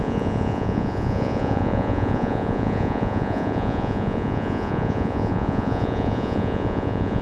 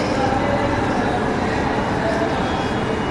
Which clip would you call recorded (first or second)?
second